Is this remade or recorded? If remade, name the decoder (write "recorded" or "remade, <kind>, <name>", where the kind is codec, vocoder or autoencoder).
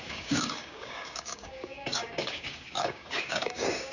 remade, codec, DAC